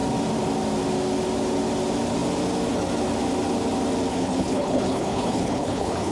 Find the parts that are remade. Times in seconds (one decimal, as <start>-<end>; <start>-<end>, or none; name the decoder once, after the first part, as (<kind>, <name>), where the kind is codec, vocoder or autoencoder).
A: 4.1-6.1 (codec, HILCodec)